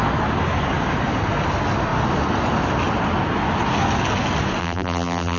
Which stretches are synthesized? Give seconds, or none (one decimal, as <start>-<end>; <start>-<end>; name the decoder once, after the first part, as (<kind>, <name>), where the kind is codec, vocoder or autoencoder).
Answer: 4.6-5.4 (vocoder, BigVGAN v2)